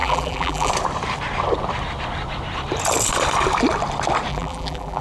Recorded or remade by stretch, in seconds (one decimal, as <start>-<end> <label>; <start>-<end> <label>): 0.0-0.7 remade; 0.7-4.3 recorded; 4.3-5.0 remade